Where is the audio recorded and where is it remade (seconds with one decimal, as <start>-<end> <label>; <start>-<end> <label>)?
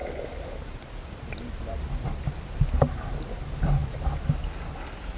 0.0-3.1 remade; 3.1-5.2 recorded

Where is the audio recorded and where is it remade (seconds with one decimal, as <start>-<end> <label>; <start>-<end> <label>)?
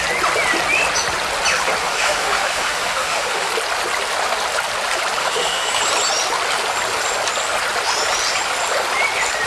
0.0-1.8 recorded; 1.8-3.5 remade; 3.5-5.2 recorded; 5.2-5.7 remade; 5.7-9.5 recorded